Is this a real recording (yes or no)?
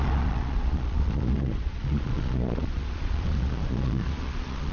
no